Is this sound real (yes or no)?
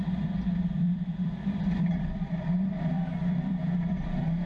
no